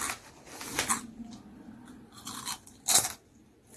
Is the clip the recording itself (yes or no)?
yes